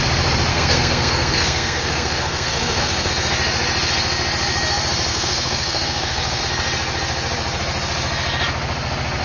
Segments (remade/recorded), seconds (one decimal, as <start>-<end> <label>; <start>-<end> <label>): 0.0-0.5 recorded; 0.5-3.1 remade; 3.1-5.1 recorded; 5.1-6.4 remade; 6.4-9.2 recorded